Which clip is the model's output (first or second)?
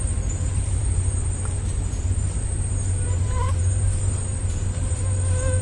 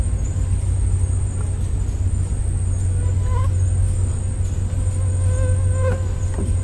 first